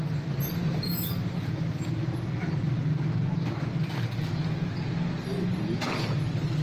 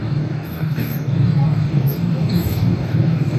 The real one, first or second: first